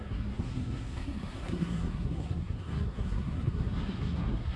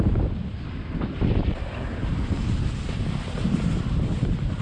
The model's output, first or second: first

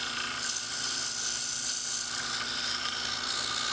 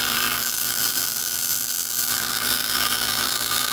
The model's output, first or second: second